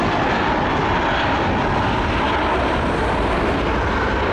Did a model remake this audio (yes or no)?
no